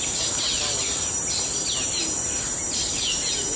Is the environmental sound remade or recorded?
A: recorded